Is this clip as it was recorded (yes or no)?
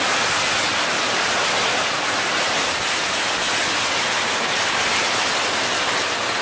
yes